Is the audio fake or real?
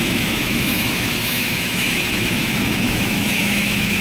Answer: fake